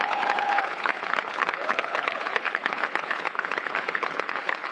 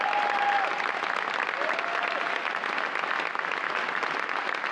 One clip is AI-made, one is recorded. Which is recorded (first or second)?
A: second